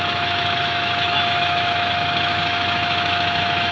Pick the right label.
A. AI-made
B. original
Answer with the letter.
A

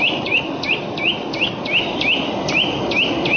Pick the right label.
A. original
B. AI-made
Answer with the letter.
A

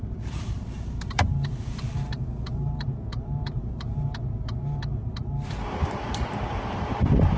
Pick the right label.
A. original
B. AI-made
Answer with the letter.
B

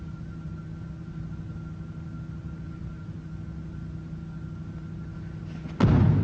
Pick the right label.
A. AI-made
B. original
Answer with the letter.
B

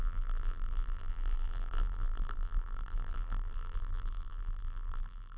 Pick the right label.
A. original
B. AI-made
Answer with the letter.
B